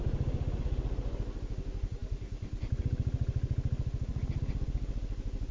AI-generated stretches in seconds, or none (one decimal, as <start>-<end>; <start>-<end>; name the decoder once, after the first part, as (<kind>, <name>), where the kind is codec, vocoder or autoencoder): none